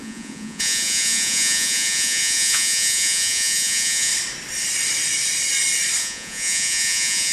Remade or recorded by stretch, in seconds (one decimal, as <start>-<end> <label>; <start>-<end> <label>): 0.0-4.1 remade; 4.1-6.0 recorded; 6.0-7.3 remade